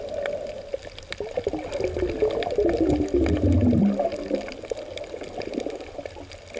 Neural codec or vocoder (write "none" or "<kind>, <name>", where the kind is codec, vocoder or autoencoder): none